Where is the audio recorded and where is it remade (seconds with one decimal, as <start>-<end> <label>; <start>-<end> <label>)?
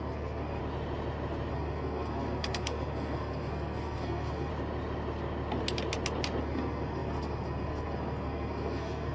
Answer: 0.0-0.6 remade; 0.6-1.5 recorded; 1.5-4.5 remade; 4.5-6.4 recorded; 6.4-9.1 remade